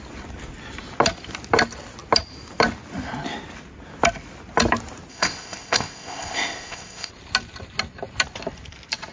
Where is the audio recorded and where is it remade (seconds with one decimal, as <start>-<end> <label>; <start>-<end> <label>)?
0.0-5.1 recorded; 5.1-7.1 remade; 7.1-9.1 recorded